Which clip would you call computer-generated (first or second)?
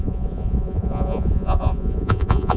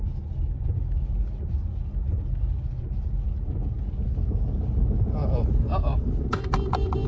first